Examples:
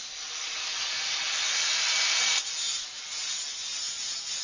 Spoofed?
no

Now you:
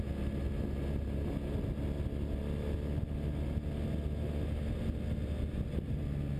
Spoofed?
no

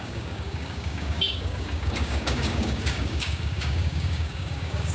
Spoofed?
yes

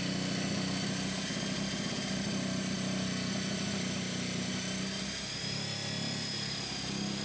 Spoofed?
no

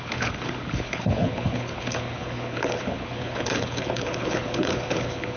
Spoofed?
yes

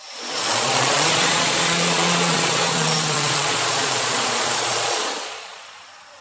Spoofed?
yes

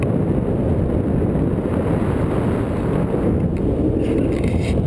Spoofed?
no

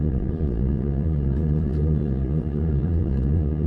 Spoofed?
yes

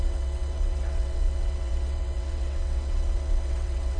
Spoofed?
yes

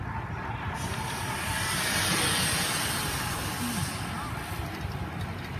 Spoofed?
no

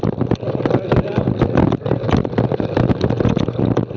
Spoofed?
no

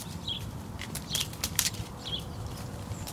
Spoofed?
yes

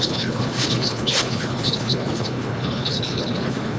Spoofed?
yes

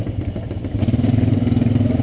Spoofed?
no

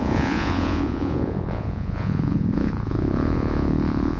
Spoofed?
yes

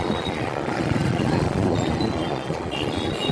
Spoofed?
yes